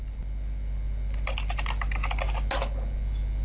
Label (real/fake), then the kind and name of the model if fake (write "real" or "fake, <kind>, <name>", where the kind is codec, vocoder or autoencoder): real